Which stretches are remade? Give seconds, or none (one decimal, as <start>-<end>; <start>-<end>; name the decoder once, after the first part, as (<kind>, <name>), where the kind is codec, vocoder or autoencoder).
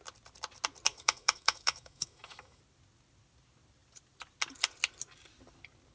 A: 0.9-2.6 (autoencoder, DAC-VAE)